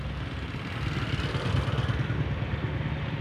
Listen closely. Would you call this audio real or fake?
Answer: real